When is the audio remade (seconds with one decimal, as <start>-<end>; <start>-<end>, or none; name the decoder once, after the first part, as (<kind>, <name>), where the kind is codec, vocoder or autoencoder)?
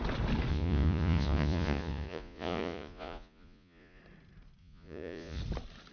0.5-4.0 (vocoder, Vocos); 4.6-5.4